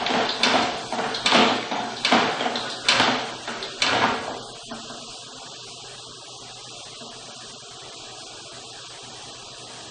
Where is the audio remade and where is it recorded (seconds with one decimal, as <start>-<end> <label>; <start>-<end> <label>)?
0.0-1.4 recorded; 1.4-2.0 remade; 2.0-9.9 recorded